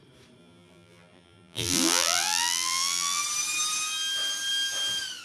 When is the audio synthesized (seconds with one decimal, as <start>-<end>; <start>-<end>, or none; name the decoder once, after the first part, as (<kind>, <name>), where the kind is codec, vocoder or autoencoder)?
0.4-3.2 (vocoder, BigVGAN v2)